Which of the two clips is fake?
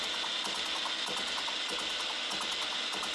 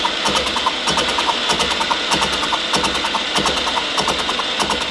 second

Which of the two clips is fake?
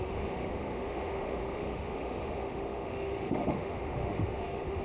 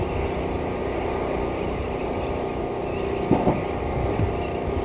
first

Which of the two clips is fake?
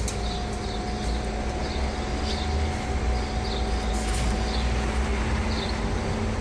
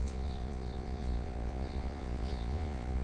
second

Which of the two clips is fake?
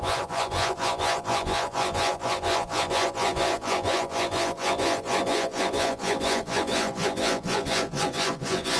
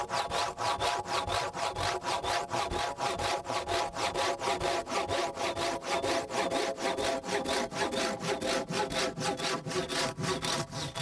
first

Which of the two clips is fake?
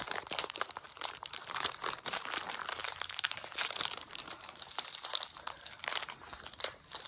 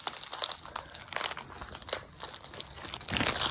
first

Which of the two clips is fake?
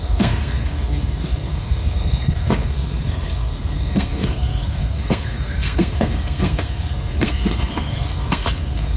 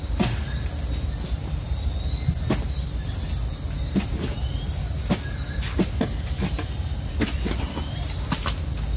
first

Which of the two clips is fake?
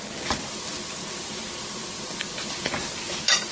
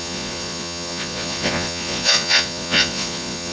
second